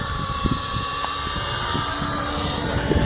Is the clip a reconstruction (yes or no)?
yes